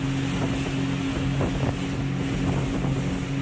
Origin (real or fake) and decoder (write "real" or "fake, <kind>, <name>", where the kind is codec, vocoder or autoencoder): real